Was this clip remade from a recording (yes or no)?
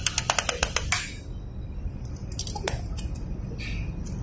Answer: no